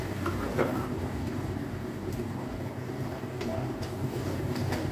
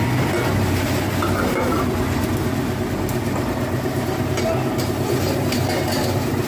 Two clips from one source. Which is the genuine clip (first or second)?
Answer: second